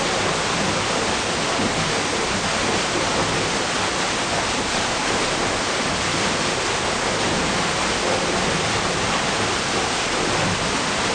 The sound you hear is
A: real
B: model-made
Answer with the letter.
A